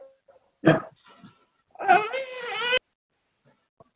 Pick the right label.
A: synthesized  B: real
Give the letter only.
B